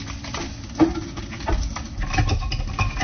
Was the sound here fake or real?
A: real